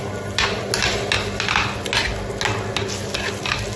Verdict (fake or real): real